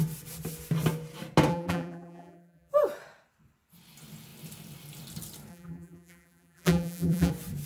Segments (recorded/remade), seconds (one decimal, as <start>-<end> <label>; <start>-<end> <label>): 0.0-1.5 recorded; 1.5-2.7 remade; 2.7-5.5 recorded; 5.5-7.3 remade; 7.3-7.7 recorded